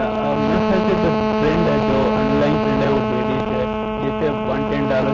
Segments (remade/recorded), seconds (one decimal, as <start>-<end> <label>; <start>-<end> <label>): 0.0-5.1 recorded